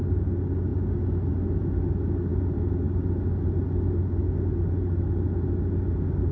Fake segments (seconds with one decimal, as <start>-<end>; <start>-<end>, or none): none